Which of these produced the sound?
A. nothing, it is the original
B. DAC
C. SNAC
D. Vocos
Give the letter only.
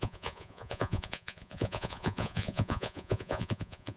D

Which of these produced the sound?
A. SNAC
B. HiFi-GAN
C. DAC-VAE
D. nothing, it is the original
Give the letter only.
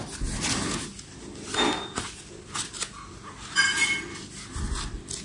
D